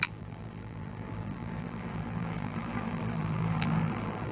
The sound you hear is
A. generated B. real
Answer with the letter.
A